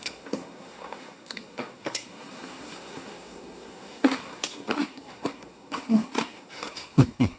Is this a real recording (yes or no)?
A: no